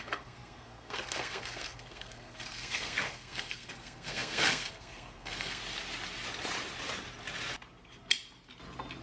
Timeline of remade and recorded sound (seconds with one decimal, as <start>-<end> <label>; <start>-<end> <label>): 0.0-5.6 remade; 5.6-9.0 recorded